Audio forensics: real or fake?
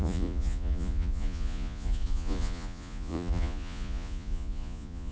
fake